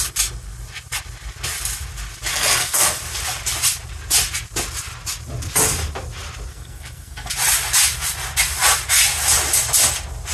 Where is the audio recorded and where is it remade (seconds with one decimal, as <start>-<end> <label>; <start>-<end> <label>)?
0.0-2.3 recorded; 2.3-2.9 remade; 2.9-6.5 recorded; 6.5-7.3 remade; 7.3-10.3 recorded